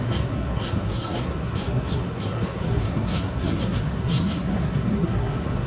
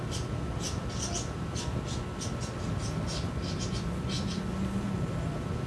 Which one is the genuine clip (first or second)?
second